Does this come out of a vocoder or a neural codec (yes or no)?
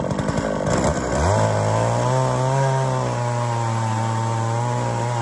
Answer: no